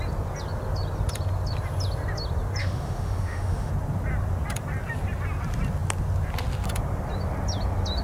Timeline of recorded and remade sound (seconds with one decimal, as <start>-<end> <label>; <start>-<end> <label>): 0.0-2.6 recorded; 2.6-3.7 remade; 3.7-8.0 recorded